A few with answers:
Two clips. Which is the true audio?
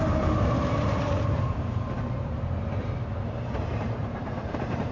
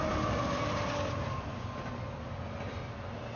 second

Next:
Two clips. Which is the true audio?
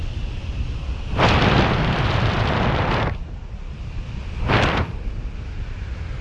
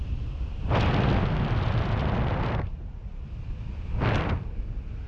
second